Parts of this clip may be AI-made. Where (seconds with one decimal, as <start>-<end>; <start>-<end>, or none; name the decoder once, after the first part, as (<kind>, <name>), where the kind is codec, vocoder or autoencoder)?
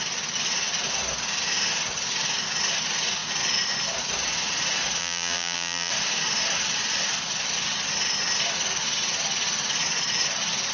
5.0-5.9 (vocoder, BigVGAN v2)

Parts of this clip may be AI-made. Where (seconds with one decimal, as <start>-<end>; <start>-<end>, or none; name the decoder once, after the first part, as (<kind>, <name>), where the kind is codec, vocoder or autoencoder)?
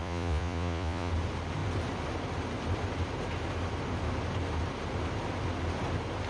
0.0-1.1 (vocoder, Vocos)